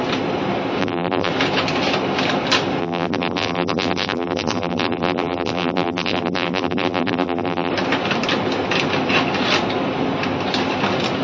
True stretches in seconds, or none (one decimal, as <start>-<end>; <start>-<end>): 0.0-0.8; 1.3-2.8; 7.7-11.2